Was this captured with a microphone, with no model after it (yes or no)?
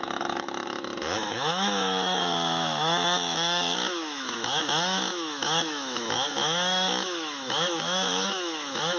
no